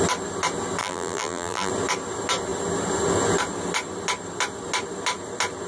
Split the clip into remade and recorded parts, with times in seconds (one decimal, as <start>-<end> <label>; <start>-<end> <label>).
0.0-0.8 recorded; 0.8-1.7 remade; 1.7-5.7 recorded